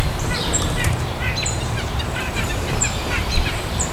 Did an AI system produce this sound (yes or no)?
yes